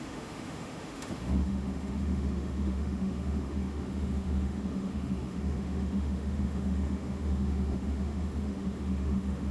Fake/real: fake